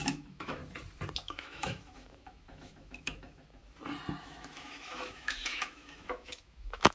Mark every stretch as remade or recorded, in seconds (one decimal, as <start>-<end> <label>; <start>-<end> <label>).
0.0-0.6 remade; 0.6-1.2 recorded; 1.2-3.6 remade; 3.6-4.2 recorded; 4.2-6.9 remade